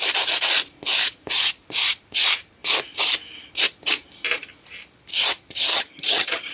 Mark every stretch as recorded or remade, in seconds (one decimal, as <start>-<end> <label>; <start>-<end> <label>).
0.0-5.7 recorded; 5.7-6.5 remade